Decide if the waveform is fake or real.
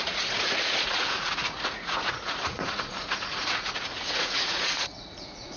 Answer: fake